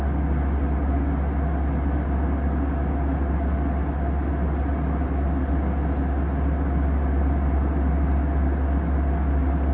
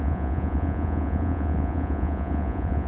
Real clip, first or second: first